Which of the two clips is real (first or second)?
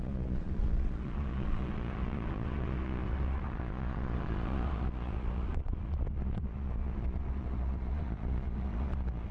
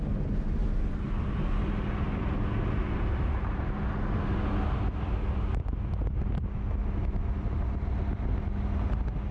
second